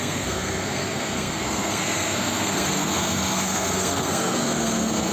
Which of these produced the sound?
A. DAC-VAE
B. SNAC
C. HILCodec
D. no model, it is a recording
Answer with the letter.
B